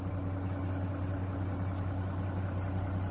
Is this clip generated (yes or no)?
no